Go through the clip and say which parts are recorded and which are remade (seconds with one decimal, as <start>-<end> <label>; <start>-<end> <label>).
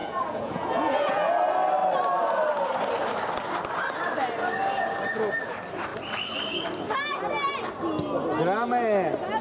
0.0-1.3 remade; 1.3-9.4 recorded